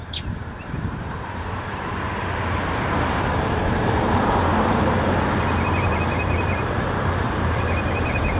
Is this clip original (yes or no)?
no